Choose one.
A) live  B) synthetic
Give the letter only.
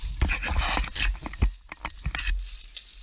A